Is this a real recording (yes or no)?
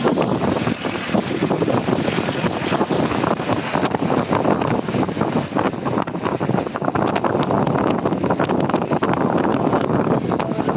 yes